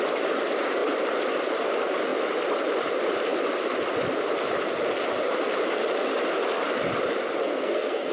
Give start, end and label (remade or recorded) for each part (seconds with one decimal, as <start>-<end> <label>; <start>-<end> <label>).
0.0-7.4 recorded; 7.4-8.1 remade